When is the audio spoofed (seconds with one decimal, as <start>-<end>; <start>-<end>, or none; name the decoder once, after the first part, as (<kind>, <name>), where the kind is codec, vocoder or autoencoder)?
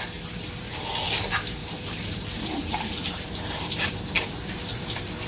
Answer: 1.6-3.9 (vocoder, BigVGAN v2)